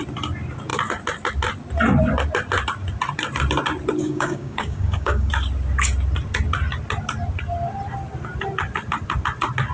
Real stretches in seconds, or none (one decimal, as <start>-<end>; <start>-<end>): 0.0-4.0; 5.3-9.7